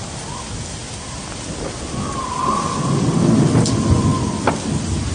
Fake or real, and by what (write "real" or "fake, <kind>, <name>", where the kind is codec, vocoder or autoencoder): real